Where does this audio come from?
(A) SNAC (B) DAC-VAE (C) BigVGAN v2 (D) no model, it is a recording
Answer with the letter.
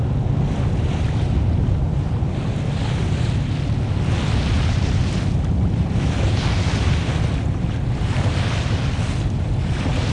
D